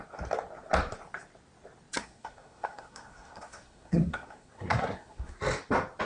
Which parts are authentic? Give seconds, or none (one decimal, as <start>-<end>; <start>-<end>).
0.0-2.0; 5.4-6.1